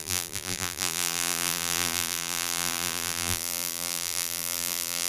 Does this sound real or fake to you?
fake